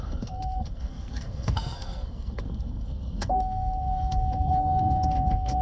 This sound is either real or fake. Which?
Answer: fake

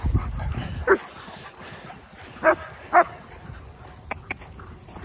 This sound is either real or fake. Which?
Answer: real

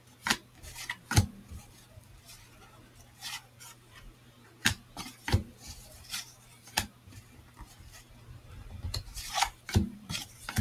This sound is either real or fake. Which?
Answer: fake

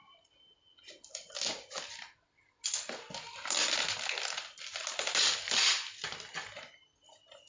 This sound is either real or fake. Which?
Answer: real